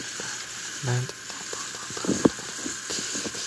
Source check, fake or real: real